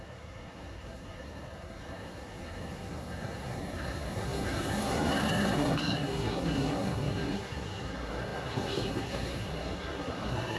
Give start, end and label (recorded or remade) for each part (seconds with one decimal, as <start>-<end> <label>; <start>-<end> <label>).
0.0-10.6 remade